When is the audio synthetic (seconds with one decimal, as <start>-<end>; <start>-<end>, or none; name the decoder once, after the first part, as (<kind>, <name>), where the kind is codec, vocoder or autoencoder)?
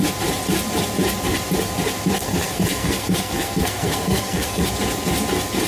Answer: 2.2-4.7 (codec, SNAC)